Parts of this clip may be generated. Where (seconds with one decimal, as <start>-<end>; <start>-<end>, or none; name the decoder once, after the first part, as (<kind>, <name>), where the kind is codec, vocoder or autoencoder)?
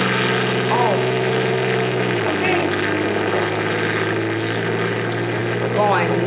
none